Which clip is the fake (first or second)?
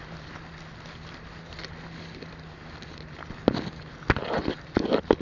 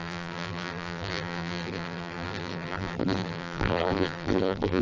second